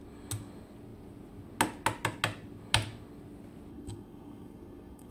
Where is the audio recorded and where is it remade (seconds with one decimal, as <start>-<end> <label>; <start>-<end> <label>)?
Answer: 0.0-3.7 recorded; 3.7-5.1 remade